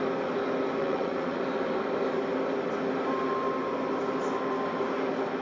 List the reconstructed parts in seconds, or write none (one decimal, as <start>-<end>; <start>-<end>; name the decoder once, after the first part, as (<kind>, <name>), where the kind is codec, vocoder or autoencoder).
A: 0.8-1.4 (vocoder, Vocos)